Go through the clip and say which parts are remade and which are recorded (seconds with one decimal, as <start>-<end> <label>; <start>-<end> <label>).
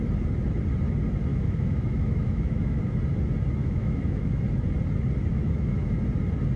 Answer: 0.0-1.3 recorded; 1.3-2.8 remade; 2.8-3.6 recorded; 3.6-4.4 remade; 4.4-5.3 recorded; 5.3-5.9 remade; 5.9-6.6 recorded